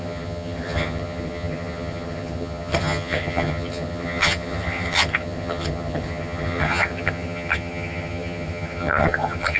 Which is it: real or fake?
fake